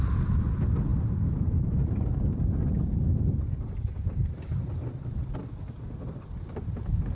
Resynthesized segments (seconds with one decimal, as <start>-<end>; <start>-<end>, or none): none